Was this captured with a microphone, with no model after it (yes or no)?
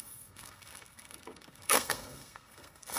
no